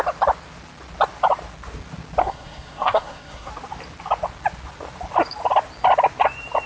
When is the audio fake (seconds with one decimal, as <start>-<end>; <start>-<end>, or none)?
2.2-3.5